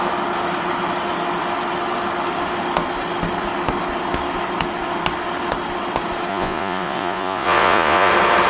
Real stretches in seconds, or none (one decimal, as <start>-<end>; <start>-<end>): 0.0-6.3; 8.1-8.5